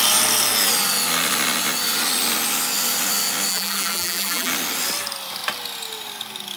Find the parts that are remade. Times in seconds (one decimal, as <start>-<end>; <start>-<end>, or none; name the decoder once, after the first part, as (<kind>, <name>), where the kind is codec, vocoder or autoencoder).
3.5-4.5 (vocoder, BigVGAN v2)